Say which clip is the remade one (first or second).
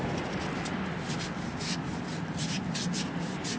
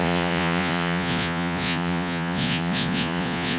second